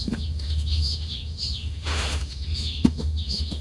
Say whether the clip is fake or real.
fake